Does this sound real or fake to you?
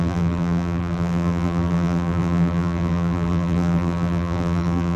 fake